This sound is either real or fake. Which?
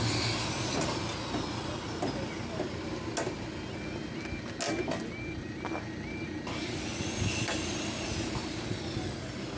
real